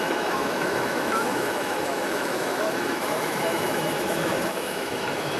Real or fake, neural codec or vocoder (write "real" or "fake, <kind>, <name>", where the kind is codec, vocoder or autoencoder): fake, autoencoder, DAC-VAE